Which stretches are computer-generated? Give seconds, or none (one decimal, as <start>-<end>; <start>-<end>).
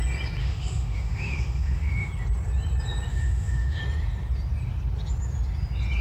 0.4-2.1; 3.1-3.8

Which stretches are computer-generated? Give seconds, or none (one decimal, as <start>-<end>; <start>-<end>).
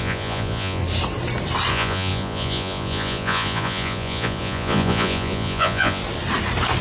0.0-0.8; 1.7-6.0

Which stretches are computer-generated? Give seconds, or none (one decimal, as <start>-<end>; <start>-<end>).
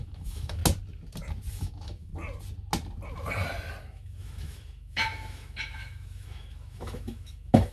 0.0-0.6; 1.5-2.1; 3.8-7.7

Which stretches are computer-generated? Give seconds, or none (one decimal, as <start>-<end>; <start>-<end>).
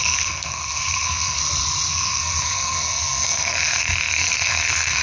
0.0-1.4; 1.9-5.0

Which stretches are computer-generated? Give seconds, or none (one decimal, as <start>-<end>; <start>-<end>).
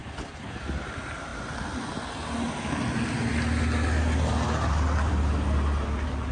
0.0-0.6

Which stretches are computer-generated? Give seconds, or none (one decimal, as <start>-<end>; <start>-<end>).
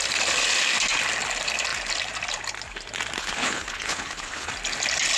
3.2-4.5